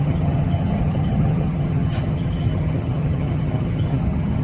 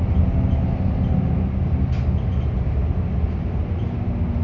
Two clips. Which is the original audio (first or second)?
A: second